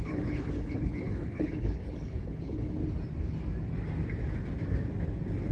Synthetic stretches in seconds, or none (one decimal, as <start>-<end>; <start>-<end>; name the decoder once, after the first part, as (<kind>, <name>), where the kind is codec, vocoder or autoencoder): 0.0-2.8 (codec, HILCodec)